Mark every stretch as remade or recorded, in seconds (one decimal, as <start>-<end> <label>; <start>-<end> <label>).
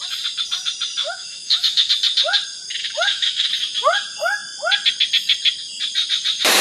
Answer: 0.0-1.0 recorded; 1.0-1.9 remade; 1.9-2.8 recorded; 2.8-3.5 remade; 3.5-6.6 recorded